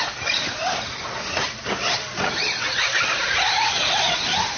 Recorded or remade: recorded